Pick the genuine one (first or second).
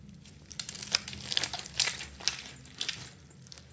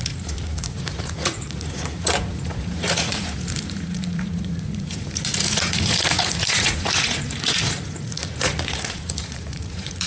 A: first